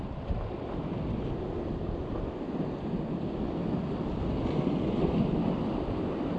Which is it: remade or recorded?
recorded